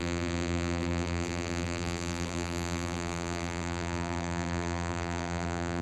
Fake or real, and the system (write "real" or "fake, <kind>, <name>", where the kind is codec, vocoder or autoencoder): fake, vocoder, BigVGAN v2